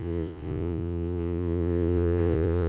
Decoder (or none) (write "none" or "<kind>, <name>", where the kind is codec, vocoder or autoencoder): vocoder, Vocos